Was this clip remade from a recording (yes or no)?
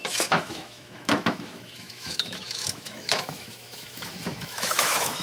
yes